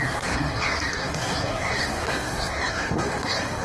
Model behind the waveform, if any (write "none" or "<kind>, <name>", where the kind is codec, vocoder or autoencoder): codec, SNAC